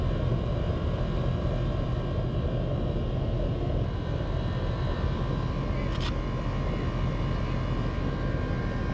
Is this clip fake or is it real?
real